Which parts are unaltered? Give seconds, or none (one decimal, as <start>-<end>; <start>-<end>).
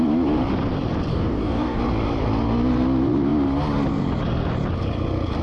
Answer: 0.0-1.1; 1.8-5.4